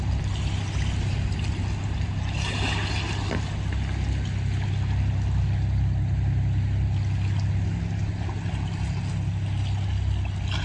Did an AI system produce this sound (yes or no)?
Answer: no